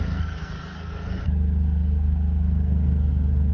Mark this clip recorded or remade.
remade